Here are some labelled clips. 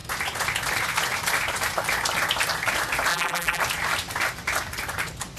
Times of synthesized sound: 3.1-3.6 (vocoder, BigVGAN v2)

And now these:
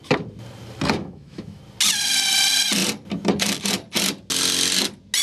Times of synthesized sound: 1.0-1.6 (autoencoder, DAC-VAE)

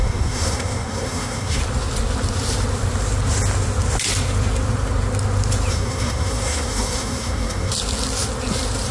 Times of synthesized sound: 0.0-1.6 (codec, SNAC); 5.7-7.7

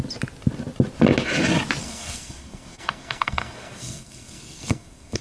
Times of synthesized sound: 1.8-5.2 (codec, SNAC)

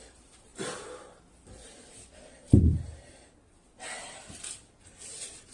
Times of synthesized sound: 0.0-0.5 (vocoder, BigVGAN v2); 1.3-5.5

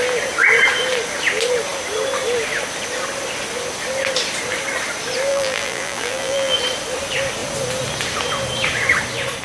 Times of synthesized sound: 5.3-6.6 (vocoder, BigVGAN v2)

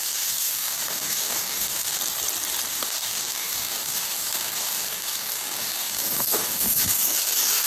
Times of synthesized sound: 0.0-2.0 (codec, DAC); 2.7-7.7

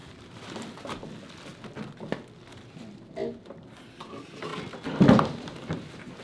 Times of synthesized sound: 0.0-1.0 (vocoder, BigVGAN v2)